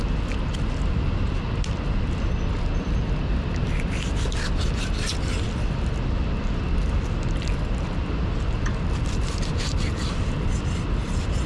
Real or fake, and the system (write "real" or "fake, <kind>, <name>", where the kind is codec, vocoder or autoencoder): real